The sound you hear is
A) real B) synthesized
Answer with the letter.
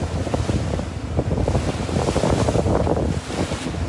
A